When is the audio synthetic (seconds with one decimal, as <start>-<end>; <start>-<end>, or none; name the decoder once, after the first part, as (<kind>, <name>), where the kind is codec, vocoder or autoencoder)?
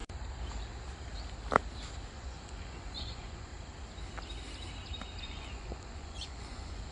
2.1-3.5 (vocoder, Vocos); 5.2-6.9